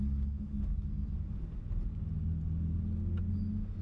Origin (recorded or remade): recorded